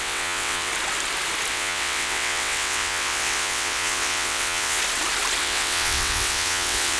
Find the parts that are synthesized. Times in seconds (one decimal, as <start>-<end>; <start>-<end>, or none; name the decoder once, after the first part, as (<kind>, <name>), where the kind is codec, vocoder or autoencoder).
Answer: 0.0-0.7 (vocoder, WaveNeXt); 1.5-4.8; 5.4-7.0